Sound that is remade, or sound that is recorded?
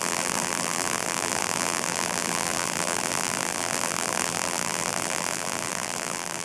remade